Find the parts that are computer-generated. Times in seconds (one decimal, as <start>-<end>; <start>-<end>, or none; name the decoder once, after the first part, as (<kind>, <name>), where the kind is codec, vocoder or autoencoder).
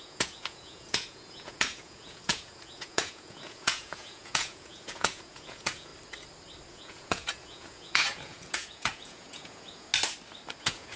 0.0-5.9 (vocoder, Vocos); 6.7-9.9; 10.6-11.0